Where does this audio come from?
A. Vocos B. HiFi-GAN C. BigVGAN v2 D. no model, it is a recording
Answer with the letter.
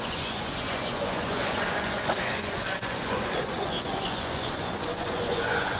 A